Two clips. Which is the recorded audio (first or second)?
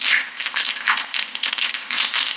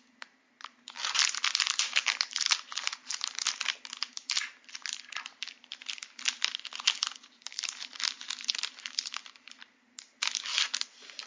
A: second